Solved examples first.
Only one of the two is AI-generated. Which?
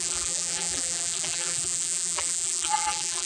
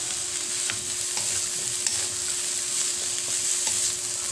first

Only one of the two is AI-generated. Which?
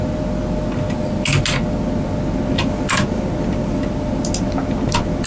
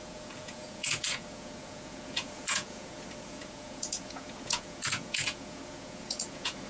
second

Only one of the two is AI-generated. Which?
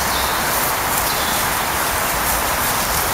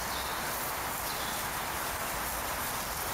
first